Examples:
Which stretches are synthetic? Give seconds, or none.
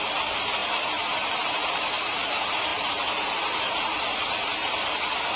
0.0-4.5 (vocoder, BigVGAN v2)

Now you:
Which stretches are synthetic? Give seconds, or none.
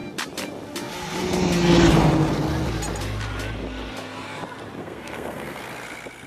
4.8-5.6 (codec, SNAC)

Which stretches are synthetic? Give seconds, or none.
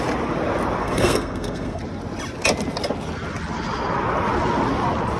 0.8-1.8 (codec, SNAC)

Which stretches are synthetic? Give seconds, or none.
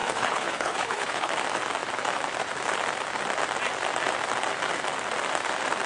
0.0-1.3 (codec, HILCodec)